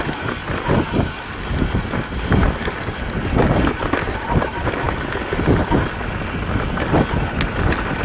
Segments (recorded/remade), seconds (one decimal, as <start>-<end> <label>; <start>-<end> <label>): 0.0-8.0 recorded